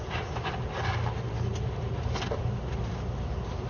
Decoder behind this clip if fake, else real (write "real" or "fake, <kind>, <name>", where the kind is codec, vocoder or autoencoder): real